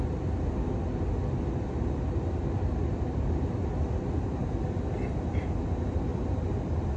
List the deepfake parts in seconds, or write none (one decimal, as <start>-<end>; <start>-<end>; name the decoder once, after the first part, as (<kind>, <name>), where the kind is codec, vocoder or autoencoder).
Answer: none